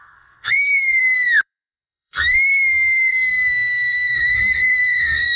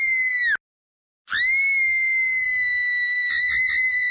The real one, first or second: second